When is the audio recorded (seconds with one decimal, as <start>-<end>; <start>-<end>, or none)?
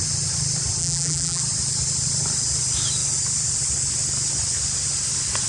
0.0-0.8; 1.4-5.5